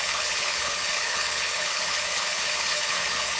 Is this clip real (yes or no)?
no